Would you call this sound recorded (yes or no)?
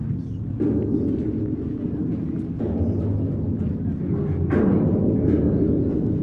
yes